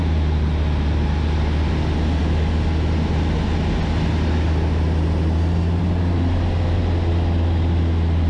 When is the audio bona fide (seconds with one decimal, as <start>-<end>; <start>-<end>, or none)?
0.0-8.3

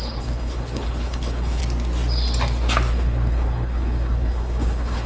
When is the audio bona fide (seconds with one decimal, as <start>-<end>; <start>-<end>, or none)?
1.6-2.9

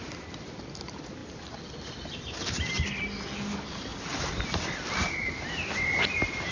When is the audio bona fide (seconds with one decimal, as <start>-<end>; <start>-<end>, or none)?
0.0-6.5